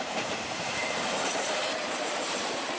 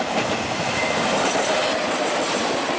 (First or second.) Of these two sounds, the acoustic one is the second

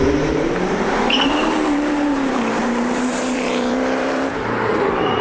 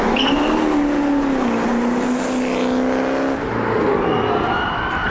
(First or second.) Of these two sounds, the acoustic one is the second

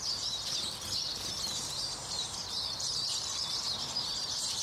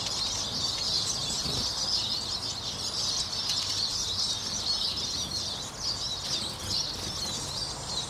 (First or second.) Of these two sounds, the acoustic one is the second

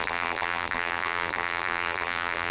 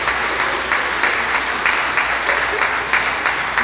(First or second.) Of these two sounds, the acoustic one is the second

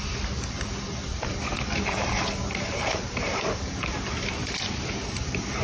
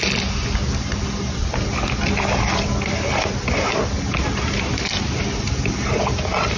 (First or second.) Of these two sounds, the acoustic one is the second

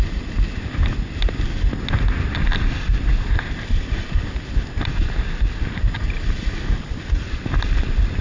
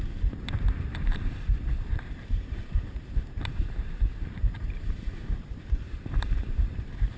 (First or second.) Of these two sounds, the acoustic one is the first